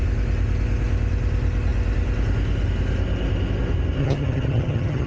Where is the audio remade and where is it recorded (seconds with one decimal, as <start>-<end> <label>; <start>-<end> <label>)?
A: 0.0-4.0 recorded; 4.0-5.1 remade